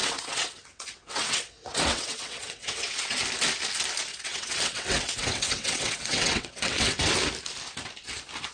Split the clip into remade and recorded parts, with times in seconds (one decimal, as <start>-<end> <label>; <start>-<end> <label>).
0.0-3.2 remade; 3.2-4.1 recorded; 4.1-7.1 remade; 7.1-8.5 recorded